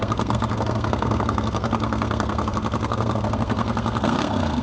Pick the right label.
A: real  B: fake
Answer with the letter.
B